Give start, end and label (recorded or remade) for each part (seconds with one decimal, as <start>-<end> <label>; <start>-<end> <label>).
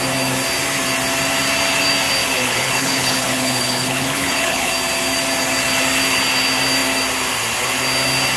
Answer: 0.0-2.2 recorded; 2.2-4.7 remade; 4.7-8.4 recorded